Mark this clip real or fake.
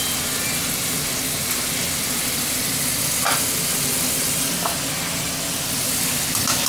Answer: real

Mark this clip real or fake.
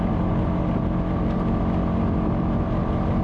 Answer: real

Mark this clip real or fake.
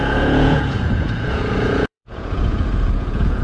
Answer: fake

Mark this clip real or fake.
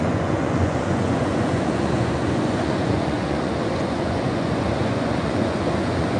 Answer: fake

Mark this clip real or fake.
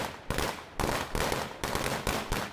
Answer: real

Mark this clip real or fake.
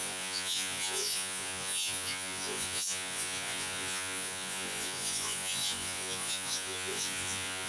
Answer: fake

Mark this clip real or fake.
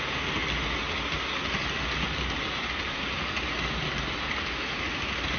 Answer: real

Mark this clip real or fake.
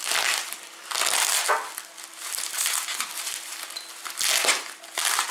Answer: real